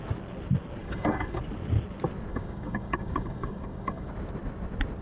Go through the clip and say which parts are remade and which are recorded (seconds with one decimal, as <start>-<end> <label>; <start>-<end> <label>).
0.0-0.8 recorded; 0.8-1.4 remade; 1.4-2.3 recorded; 2.3-4.1 remade; 4.1-5.0 recorded